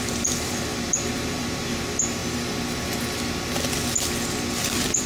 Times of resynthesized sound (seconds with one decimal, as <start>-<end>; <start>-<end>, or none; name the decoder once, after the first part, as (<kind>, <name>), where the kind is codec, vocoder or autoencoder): 0.0-2.2 (vocoder, BigVGAN v2); 4.5-5.1

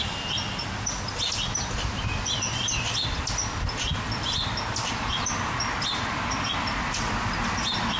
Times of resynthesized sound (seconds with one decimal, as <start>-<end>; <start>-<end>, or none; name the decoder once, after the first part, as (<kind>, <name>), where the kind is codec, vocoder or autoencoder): none

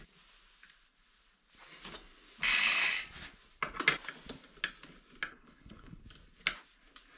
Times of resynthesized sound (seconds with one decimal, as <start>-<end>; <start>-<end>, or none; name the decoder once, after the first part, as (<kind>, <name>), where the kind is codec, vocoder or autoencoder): 5.3-6.0 (codec, HILCodec)

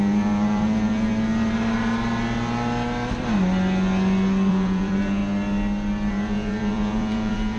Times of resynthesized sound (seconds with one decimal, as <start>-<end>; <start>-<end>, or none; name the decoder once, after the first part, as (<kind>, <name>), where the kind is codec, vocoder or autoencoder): 0.0-1.1 (vocoder, Vocos); 4.5-5.2; 6.1-7.6

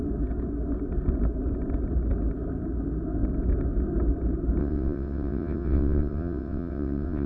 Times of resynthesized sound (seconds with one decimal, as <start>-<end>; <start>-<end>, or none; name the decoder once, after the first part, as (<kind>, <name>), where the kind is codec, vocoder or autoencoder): 4.6-7.3 (vocoder, WaveNeXt)

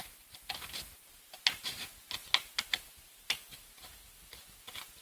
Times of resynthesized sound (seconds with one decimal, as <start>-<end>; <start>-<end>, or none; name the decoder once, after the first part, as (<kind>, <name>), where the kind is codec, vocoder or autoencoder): 2.2-4.6 (vocoder, BigVGAN v2)

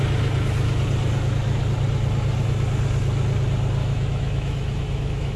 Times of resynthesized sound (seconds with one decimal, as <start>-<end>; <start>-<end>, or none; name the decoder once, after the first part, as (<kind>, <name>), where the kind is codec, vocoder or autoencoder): 3.8-5.4 (autoencoder, DAC-VAE)